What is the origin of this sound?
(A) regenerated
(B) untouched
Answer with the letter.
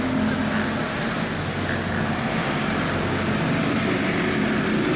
B